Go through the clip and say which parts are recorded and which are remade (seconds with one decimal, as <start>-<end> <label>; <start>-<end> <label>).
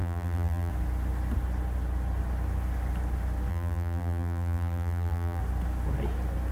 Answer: 0.0-0.7 remade; 0.7-3.5 recorded; 3.5-5.4 remade; 5.4-6.5 recorded